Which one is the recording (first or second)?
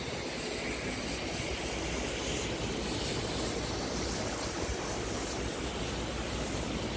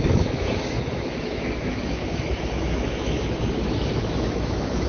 first